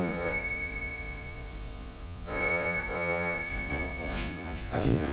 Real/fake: fake